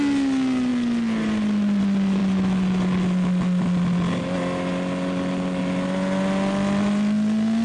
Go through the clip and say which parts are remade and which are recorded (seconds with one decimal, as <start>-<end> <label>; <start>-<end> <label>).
0.0-7.6 recorded